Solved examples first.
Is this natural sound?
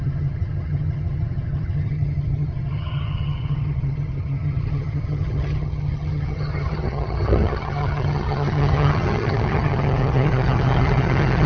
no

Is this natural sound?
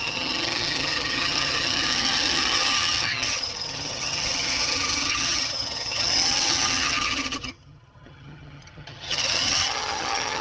no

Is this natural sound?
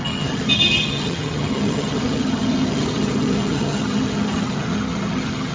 no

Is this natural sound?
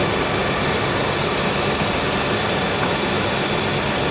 yes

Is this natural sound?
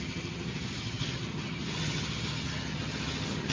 no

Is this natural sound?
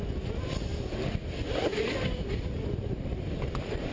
yes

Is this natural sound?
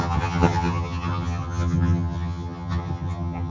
no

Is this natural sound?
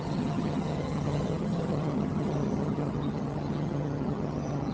no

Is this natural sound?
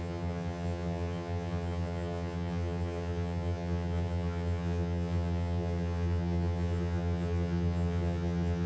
no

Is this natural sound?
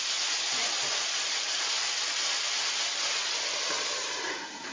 yes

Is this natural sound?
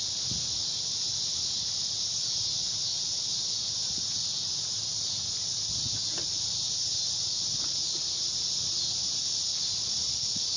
yes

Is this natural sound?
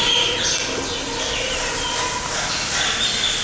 yes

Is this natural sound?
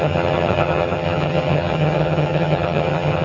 no